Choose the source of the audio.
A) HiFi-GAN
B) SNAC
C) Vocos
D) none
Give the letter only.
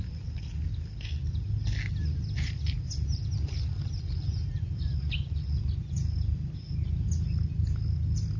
D